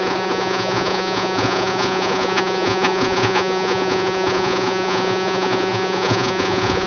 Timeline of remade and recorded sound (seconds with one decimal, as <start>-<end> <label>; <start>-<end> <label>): 0.0-6.9 remade